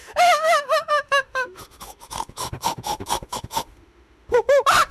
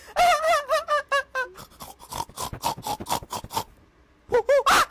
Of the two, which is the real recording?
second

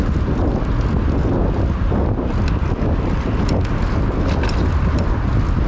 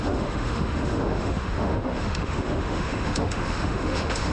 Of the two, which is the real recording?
first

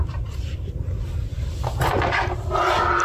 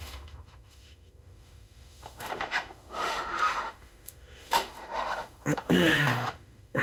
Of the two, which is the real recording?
first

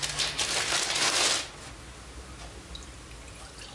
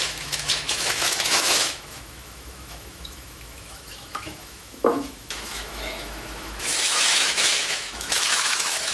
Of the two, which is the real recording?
first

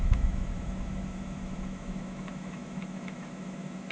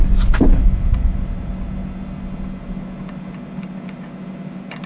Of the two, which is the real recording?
second